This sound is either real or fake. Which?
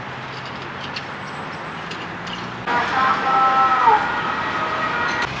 real